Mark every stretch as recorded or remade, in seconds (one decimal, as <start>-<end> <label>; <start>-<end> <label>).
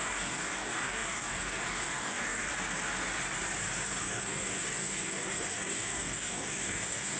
0.0-2.5 remade; 2.5-4.0 recorded; 4.0-7.2 remade